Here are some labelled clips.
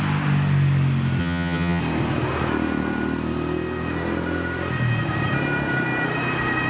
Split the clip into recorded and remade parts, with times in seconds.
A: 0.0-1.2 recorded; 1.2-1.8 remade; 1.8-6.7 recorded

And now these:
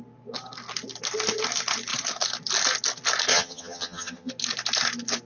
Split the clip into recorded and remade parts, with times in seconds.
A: 0.0-3.3 recorded; 3.3-4.3 remade; 4.3-5.3 recorded

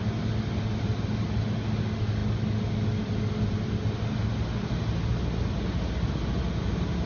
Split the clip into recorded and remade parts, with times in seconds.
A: 0.0-7.1 recorded

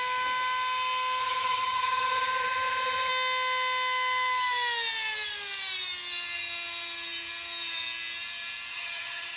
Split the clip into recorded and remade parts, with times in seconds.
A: 0.0-1.2 recorded; 1.2-3.1 remade; 3.1-8.7 recorded; 8.7-9.4 remade

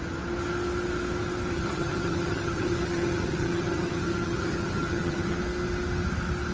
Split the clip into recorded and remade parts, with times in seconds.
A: 0.0-1.5 recorded; 1.5-5.4 remade; 5.4-6.5 recorded

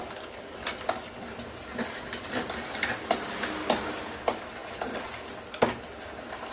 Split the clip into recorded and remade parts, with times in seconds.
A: 0.0-6.5 recorded

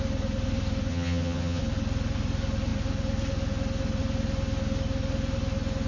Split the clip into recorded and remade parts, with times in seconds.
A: 0.0-0.9 recorded; 0.9-1.6 remade; 1.6-5.9 recorded